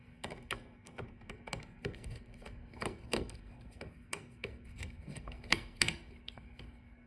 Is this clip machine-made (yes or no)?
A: yes